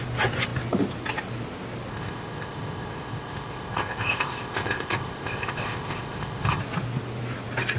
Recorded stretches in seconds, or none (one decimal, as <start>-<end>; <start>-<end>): 0.0-1.9; 6.6-7.8